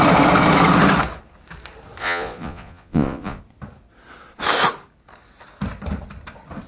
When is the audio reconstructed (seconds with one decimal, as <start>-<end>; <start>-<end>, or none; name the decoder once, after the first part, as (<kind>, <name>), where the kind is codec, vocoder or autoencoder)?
2.0-3.4 (vocoder, Vocos)